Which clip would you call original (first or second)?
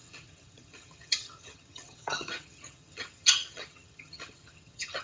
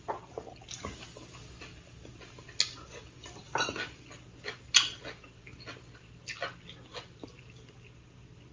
second